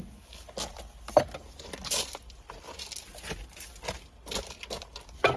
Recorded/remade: recorded